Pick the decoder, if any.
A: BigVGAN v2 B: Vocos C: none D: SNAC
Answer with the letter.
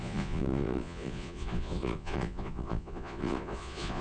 B